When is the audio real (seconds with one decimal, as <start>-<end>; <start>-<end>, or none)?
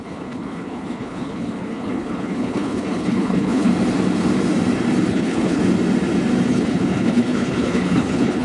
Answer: 3.7-5.1; 5.6-6.5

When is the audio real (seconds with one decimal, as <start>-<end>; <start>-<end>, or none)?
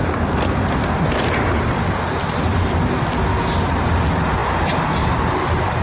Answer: 0.0-5.8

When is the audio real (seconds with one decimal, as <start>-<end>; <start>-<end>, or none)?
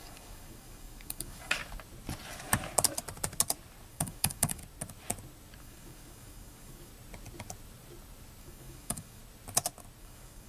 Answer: 1.6-3.9; 4.6-5.6; 6.9-8.4; 9.2-10.0